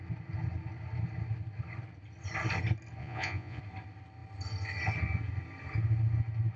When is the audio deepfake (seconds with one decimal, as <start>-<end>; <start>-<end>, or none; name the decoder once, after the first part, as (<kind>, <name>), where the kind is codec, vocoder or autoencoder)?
3.0-3.6 (vocoder, Vocos)